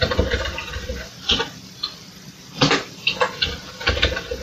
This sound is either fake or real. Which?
fake